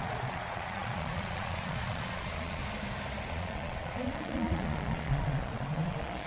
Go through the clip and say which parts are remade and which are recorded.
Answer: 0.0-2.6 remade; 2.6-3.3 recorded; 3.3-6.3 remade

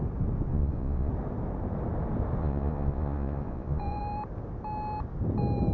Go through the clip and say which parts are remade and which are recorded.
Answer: 0.0-0.5 recorded; 0.5-1.1 remade; 1.1-2.4 recorded; 2.4-4.0 remade; 4.0-5.7 recorded

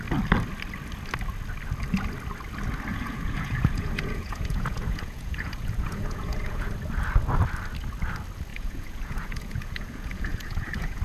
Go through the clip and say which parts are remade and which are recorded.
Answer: 0.0-2.9 recorded; 2.9-6.7 remade; 6.7-8.5 recorded; 8.5-11.0 remade

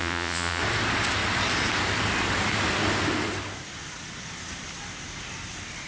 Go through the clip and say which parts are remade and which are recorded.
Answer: 0.0-0.6 remade; 0.6-5.9 recorded